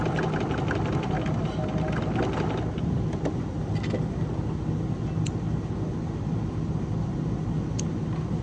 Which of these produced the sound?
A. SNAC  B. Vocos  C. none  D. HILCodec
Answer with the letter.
C